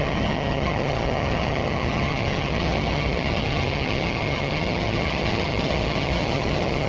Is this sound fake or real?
fake